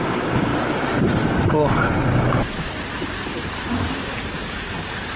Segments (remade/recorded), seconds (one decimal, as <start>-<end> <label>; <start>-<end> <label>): 0.0-0.5 remade; 0.5-3.6 recorded; 3.6-5.2 remade